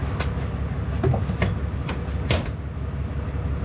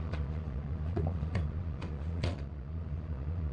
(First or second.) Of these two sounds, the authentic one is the first